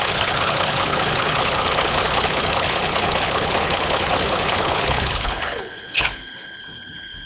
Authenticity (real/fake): fake